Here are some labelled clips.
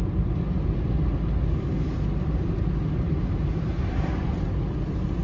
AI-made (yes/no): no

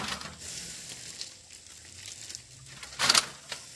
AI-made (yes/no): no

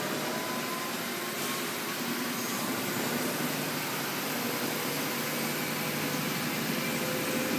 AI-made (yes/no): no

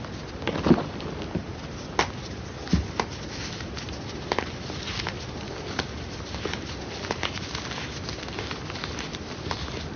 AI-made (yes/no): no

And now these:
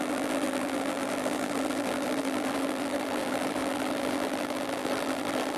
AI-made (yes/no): yes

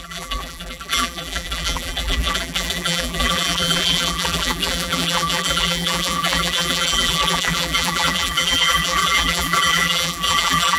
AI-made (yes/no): yes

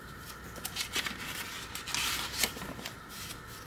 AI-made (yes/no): no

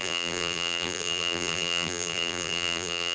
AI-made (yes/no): yes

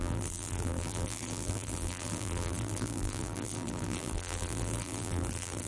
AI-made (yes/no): yes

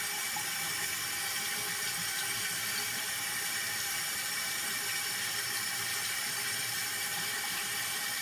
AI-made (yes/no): yes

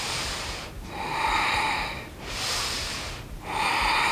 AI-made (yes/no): yes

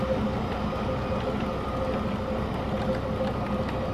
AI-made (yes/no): no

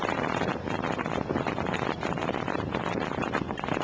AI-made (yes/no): yes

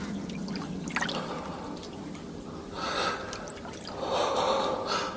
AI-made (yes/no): no